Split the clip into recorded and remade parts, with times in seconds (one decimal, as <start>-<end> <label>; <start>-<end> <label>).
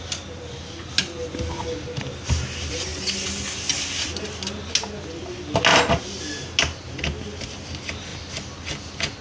0.0-9.2 recorded